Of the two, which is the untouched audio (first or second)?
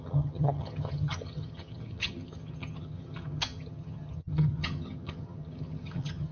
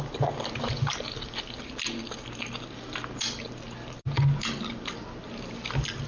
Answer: second